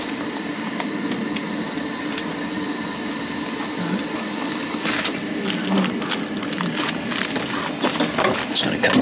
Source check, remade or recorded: recorded